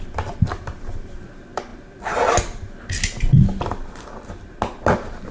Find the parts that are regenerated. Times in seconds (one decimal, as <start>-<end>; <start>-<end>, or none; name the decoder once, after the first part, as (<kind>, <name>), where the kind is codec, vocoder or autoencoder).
none